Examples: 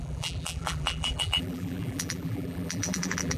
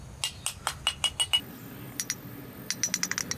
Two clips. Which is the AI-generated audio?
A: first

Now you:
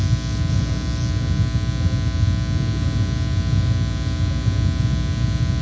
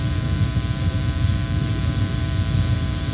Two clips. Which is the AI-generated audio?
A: second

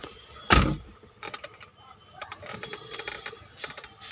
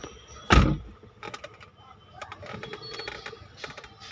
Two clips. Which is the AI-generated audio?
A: first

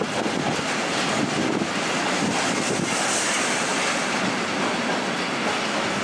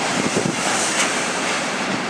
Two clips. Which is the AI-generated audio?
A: second